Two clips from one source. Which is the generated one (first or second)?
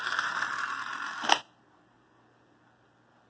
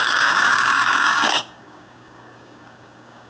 second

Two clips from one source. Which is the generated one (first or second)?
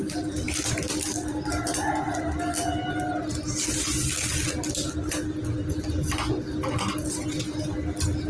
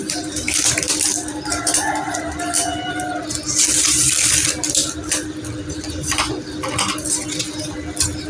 second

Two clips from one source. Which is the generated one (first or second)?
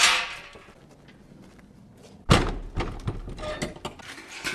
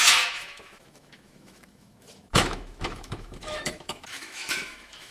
second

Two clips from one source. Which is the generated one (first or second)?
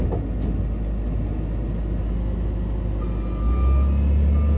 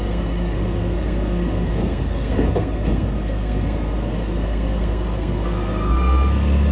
second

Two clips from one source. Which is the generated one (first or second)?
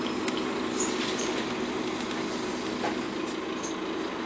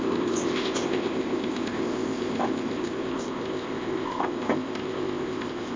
second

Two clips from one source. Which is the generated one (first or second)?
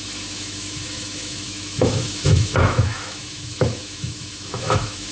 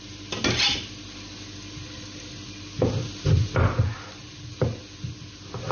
first